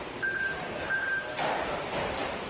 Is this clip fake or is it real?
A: real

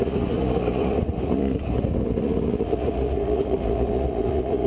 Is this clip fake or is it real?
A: fake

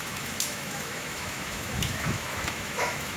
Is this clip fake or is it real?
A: fake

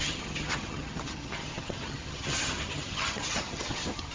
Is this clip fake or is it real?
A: fake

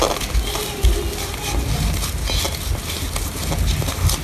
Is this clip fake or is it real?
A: real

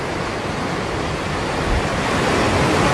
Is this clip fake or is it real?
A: real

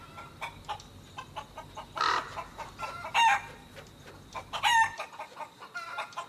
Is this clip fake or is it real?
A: real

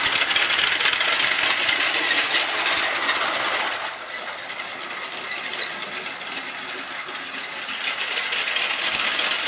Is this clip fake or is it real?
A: real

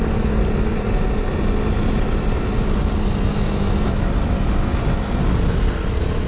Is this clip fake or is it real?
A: real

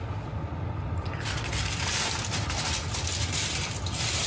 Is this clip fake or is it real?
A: real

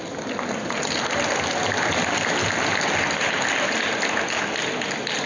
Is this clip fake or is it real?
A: real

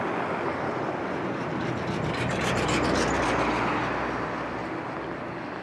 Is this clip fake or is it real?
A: real